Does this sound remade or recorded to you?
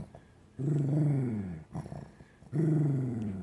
recorded